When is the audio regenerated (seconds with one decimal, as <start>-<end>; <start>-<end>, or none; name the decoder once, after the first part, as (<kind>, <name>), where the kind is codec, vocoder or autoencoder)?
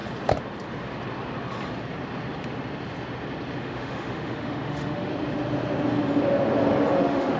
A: 3.6-5.1 (autoencoder, DAC-VAE); 7.0-7.4